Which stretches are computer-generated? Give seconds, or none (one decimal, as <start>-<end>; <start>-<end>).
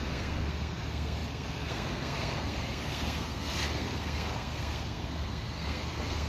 0.0-6.3